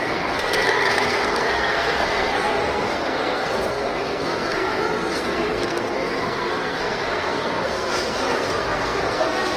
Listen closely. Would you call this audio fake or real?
fake